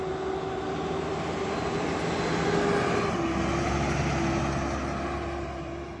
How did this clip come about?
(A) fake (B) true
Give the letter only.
B